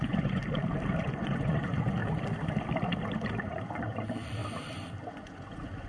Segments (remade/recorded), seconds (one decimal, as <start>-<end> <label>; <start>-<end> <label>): 0.0-0.4 remade; 0.4-1.0 recorded; 1.0-2.0 remade; 2.0-3.4 recorded; 3.4-4.4 remade; 4.4-5.1 recorded; 5.1-5.9 remade